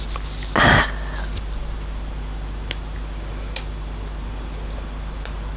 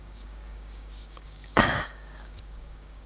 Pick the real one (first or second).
first